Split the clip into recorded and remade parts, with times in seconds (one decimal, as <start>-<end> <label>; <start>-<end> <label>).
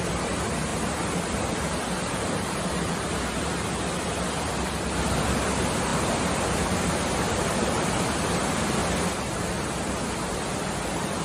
0.0-11.2 recorded